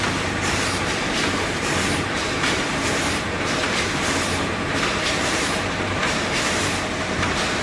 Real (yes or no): no